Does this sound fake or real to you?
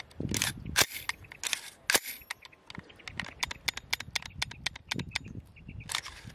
real